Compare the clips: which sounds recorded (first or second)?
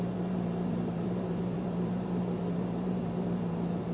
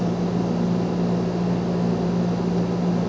second